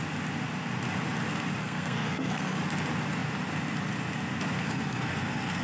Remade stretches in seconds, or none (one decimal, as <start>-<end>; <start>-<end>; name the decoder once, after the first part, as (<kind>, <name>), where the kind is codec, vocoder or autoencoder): 1.6-2.6 (codec, SNAC); 4.6-5.6